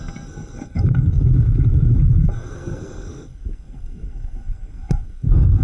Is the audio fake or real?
fake